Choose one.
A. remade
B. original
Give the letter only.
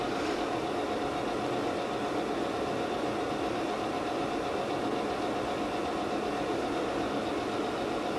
B